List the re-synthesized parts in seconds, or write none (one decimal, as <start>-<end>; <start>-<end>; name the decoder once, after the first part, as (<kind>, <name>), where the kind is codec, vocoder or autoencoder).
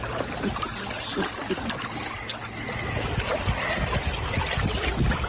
none